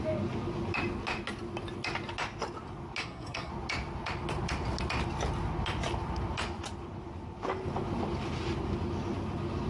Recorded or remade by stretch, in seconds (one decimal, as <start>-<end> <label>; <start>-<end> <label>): 0.0-3.0 recorded; 3.0-3.5 remade; 3.5-9.7 recorded